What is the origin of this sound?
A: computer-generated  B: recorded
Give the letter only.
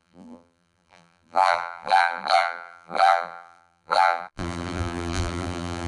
A